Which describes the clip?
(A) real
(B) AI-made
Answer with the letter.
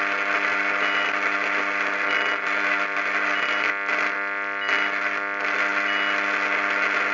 A